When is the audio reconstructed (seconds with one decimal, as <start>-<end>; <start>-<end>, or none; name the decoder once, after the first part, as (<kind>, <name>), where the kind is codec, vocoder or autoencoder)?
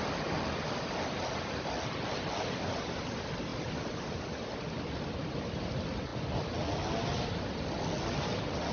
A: none